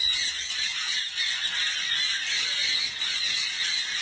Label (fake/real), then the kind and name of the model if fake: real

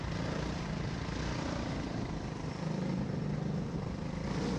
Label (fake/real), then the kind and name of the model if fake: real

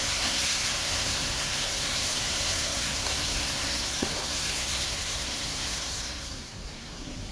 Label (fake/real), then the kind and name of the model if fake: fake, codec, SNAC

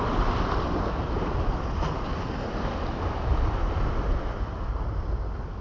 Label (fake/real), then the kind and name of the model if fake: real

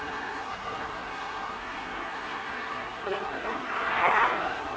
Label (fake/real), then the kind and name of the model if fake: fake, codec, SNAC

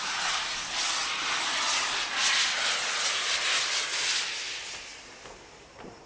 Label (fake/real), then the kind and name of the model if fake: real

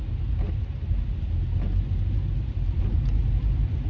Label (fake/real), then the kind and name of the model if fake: real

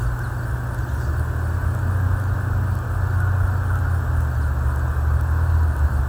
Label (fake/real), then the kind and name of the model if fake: real